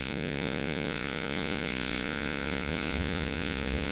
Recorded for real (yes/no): no